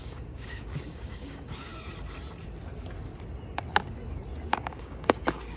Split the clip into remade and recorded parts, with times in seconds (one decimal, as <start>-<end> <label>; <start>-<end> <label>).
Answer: 0.0-1.7 remade; 1.7-4.5 recorded; 4.5-5.6 remade